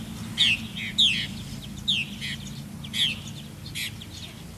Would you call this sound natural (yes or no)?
yes